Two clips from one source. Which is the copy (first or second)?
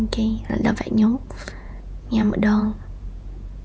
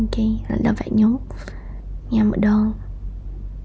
first